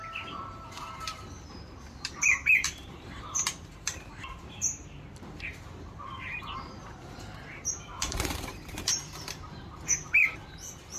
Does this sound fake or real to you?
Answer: fake